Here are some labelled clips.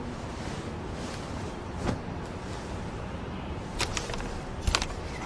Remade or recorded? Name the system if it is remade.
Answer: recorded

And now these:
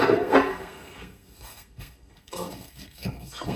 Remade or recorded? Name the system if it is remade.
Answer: remade, codec, SNAC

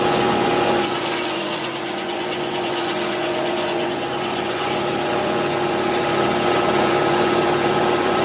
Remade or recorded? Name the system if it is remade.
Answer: remade, vocoder, Vocos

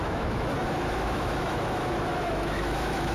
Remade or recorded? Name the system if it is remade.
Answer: remade, autoencoder, DAC-VAE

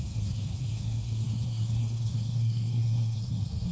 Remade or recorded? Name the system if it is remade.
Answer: remade, codec, SNAC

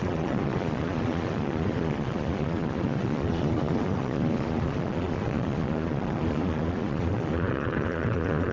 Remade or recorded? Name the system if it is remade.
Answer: remade, vocoder, Vocos